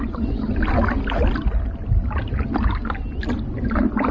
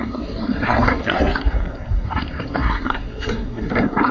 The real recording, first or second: first